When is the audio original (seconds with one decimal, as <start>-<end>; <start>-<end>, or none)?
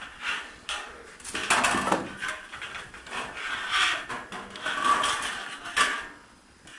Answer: 0.0-6.8